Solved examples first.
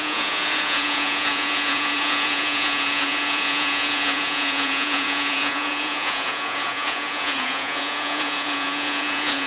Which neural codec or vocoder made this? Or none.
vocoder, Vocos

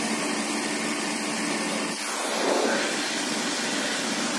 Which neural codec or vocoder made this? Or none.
none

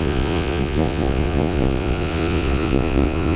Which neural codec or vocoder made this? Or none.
vocoder, Vocos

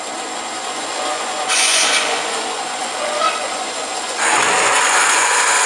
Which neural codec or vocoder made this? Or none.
vocoder, Vocos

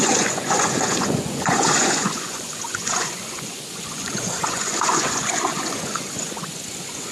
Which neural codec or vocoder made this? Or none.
vocoder, Vocos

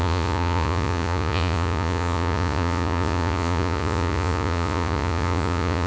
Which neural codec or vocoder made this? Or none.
vocoder, Vocos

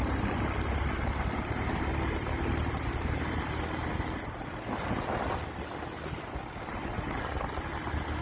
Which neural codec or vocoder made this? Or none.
none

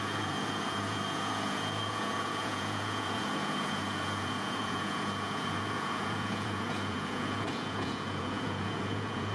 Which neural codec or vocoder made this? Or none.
vocoder, Vocos